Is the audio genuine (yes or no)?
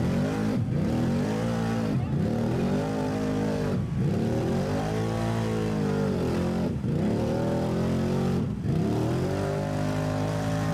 yes